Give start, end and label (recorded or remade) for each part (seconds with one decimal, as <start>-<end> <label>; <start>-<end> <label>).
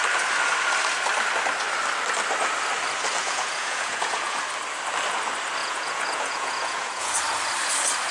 0.0-3.2 recorded; 3.2-4.4 remade; 4.4-5.6 recorded; 5.6-7.1 remade; 7.1-8.1 recorded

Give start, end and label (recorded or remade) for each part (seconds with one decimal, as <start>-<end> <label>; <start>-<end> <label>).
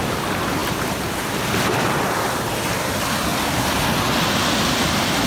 0.0-0.6 recorded; 0.6-1.9 remade; 1.9-5.3 recorded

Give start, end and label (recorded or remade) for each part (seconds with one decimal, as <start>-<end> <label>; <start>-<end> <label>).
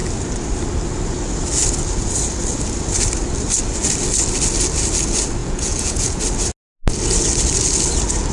0.0-5.4 recorded; 5.4-6.2 remade; 6.2-8.3 recorded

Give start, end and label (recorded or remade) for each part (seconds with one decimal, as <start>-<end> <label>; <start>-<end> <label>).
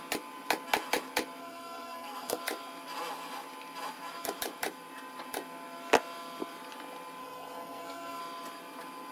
0.0-1.4 recorded; 1.4-2.4 remade; 2.4-7.2 recorded; 7.2-8.2 remade; 8.2-9.1 recorded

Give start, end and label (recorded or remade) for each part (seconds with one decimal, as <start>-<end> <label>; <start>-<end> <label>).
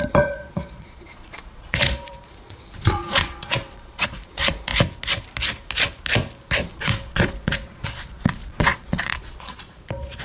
0.0-4.7 remade; 4.7-6.7 recorded; 6.7-10.2 remade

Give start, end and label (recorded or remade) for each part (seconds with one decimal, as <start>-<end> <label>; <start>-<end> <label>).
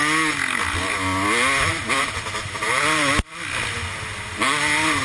0.0-1.7 recorded; 1.7-2.8 remade; 2.8-5.0 recorded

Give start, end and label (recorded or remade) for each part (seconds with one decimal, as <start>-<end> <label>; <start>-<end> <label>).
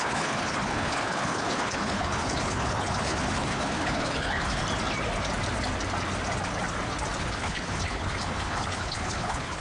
0.0-4.6 remade; 4.6-7.2 recorded; 7.2-9.6 remade